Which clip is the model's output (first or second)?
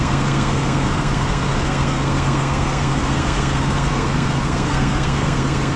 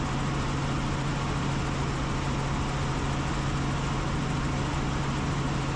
first